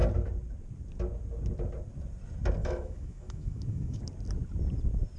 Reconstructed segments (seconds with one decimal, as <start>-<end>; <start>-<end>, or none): 2.6-4.0